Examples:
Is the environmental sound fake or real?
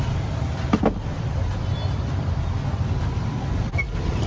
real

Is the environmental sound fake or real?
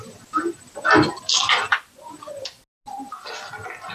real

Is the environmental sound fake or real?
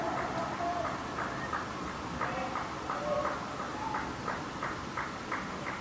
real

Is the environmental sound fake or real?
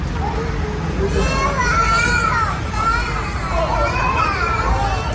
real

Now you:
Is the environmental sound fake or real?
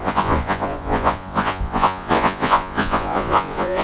fake